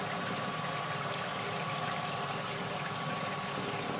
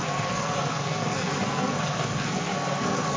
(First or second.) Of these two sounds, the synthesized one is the second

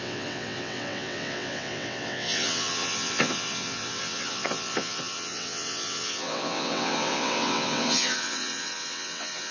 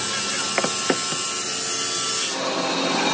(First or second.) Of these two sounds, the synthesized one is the first